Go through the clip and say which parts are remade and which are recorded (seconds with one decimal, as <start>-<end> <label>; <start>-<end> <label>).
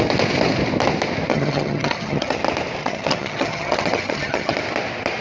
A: 0.0-1.3 recorded; 1.3-2.4 remade; 2.4-2.8 recorded; 2.8-4.6 remade; 4.6-5.2 recorded